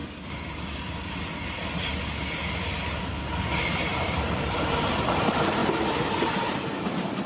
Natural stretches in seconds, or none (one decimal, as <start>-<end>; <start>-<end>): 0.0-3.9; 4.8-7.3